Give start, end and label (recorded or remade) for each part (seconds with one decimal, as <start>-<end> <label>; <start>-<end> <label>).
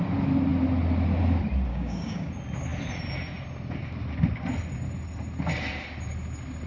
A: 0.0-1.7 recorded; 1.7-2.3 remade; 2.3-6.7 recorded